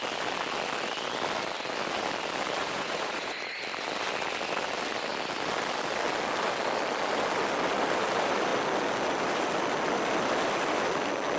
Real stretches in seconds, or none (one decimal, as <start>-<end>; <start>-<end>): 0.0-2.6; 3.5-11.4